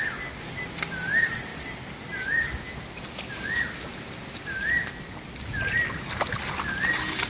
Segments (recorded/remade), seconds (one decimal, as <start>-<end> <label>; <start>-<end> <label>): 0.0-7.3 recorded